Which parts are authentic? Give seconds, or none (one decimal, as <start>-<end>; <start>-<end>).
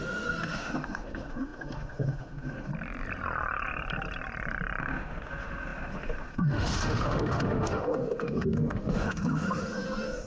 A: 2.7-4.8